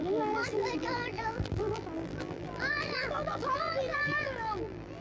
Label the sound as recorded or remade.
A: remade